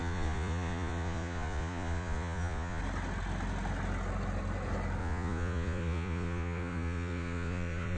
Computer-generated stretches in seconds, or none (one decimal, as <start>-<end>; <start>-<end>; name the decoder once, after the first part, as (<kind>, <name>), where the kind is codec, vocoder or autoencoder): 0.0-2.8 (vocoder, Vocos); 5.0-8.0